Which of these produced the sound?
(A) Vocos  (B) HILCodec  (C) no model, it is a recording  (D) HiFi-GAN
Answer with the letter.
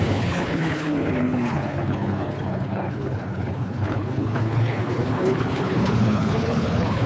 B